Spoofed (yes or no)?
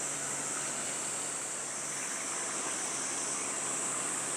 no